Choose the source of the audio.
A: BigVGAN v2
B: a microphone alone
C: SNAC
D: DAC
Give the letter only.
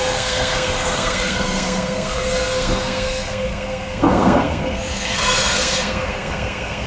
C